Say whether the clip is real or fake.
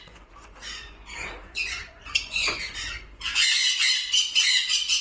fake